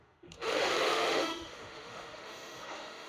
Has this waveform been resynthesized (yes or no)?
yes